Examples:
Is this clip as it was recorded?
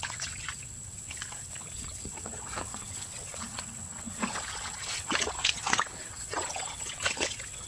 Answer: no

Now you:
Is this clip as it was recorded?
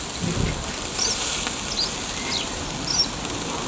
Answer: yes